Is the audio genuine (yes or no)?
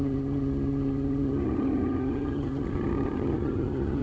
no